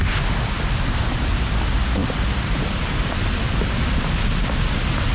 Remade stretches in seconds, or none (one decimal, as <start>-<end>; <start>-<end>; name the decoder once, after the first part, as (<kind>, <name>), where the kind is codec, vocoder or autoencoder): 2.0-3.7 (vocoder, BigVGAN v2)